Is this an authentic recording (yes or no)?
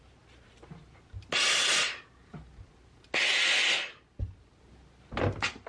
yes